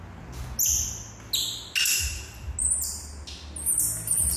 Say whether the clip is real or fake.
real